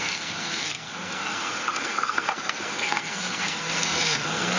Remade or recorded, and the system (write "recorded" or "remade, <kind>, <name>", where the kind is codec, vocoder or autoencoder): remade, codec, SNAC